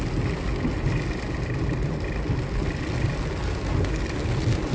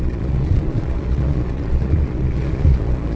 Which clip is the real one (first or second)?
first